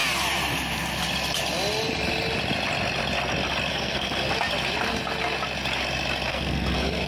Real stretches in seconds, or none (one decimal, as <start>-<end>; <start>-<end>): 0.0-3.7; 4.3-6.3